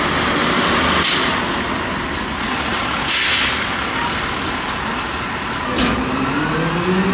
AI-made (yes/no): no